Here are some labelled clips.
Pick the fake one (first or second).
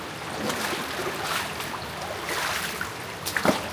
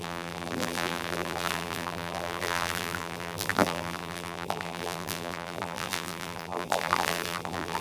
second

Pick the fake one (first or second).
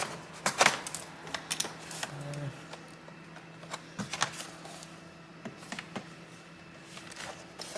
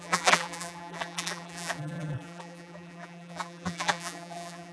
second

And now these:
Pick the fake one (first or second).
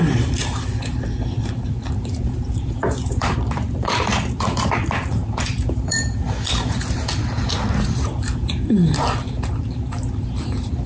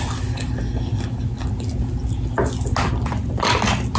first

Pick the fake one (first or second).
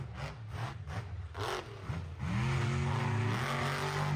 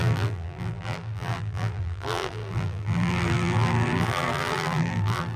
second